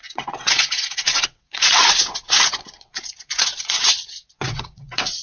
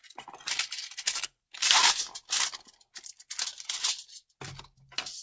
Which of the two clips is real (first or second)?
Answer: second